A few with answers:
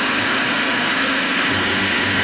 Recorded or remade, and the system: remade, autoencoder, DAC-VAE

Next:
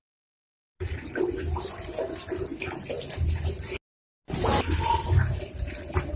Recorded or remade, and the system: recorded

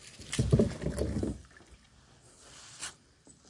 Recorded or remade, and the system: recorded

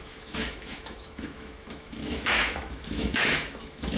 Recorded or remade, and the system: remade, autoencoder, DAC-VAE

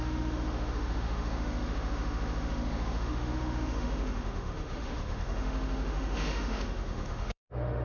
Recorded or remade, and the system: remade, autoencoder, DAC-VAE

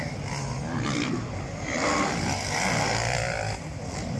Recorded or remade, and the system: recorded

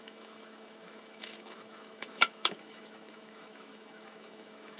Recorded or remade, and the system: remade, autoencoder, DAC-VAE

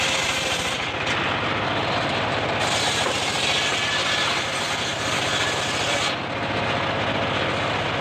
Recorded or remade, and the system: recorded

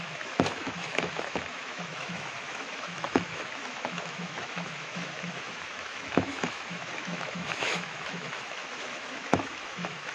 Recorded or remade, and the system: remade, autoencoder, DAC-VAE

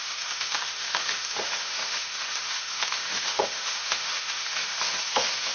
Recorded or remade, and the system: remade, autoencoder, DAC-VAE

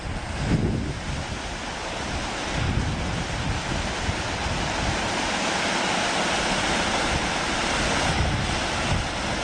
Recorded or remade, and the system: recorded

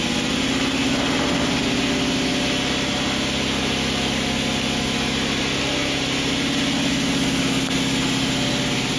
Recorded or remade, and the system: recorded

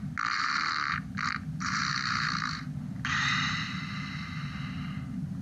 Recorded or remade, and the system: recorded